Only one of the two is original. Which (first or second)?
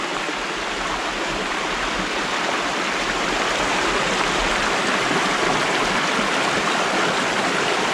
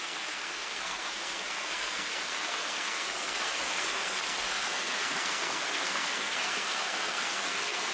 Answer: first